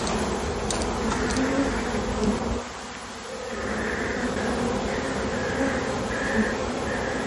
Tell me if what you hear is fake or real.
real